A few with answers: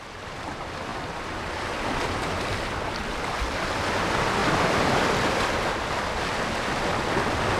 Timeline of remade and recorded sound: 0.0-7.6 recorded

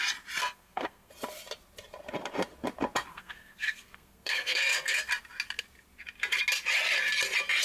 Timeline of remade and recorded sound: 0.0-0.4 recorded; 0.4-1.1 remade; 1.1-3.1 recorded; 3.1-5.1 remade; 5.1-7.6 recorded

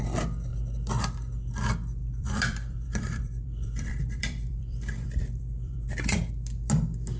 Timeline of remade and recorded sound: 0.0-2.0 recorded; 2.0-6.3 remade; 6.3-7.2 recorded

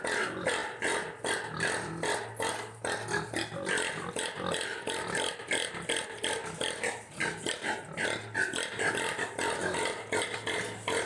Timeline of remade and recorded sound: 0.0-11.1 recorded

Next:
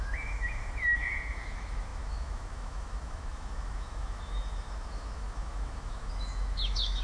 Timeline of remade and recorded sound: 0.0-7.0 remade